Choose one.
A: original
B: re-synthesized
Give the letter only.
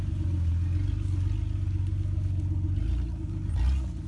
A